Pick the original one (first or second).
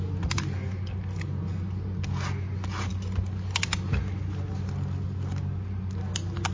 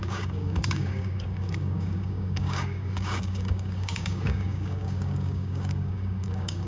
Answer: first